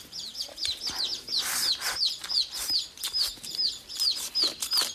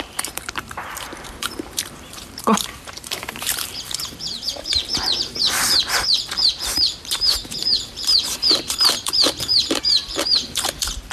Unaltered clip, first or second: first